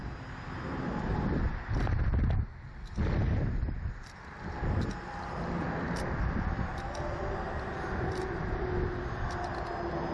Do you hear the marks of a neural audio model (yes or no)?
no